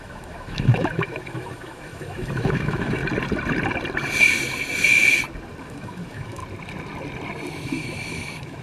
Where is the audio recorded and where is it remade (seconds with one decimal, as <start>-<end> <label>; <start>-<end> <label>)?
0.0-3.0 remade; 3.0-5.6 recorded; 5.6-6.4 remade; 6.4-7.5 recorded; 7.5-8.6 remade